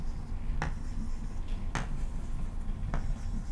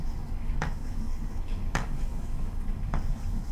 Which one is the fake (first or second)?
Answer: second